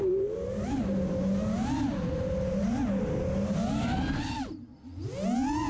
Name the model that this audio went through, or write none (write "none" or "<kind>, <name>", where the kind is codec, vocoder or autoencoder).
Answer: none